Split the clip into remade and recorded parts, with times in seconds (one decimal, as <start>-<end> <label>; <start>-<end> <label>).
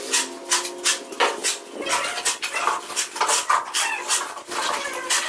0.0-5.3 recorded